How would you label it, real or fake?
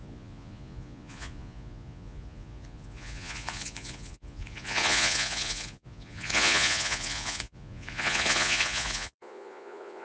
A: fake